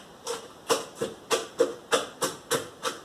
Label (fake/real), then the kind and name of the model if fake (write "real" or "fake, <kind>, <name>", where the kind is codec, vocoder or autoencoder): real